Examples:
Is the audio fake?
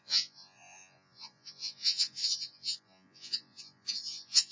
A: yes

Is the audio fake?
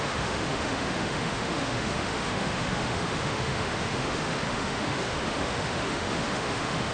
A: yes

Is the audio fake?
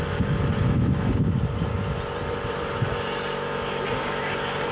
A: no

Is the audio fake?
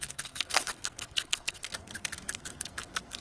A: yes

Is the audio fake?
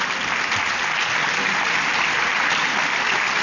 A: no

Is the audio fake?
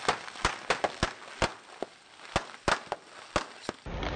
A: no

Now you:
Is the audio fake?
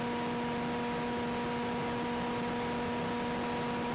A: no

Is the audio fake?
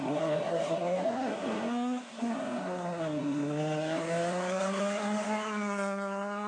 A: yes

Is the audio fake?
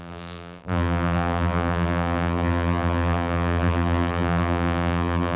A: yes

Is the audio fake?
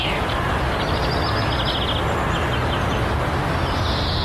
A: no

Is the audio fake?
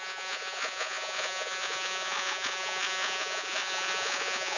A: yes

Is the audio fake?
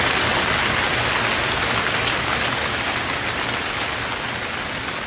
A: no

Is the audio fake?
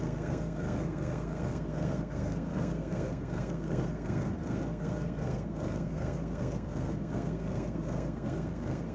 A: yes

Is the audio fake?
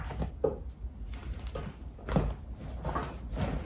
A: no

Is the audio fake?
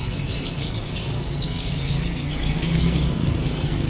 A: yes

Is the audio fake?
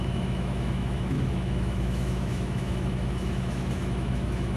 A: yes